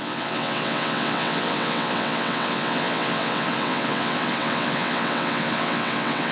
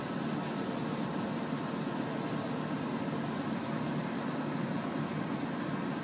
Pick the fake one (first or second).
first